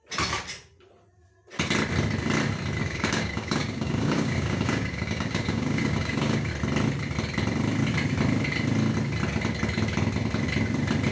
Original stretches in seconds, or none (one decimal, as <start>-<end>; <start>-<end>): 0.0-2.8; 6.5-11.1